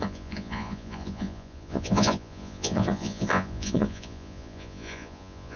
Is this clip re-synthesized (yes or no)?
yes